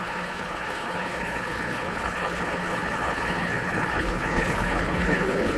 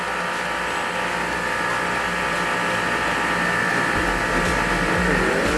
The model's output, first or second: first